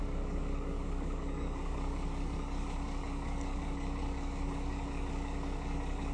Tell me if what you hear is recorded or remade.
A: remade